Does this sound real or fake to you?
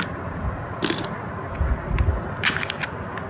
real